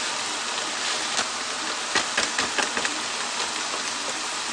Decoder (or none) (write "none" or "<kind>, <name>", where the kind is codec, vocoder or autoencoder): none